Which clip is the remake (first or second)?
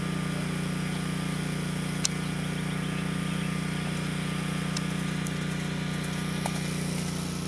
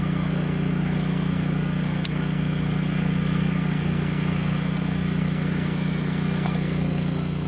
second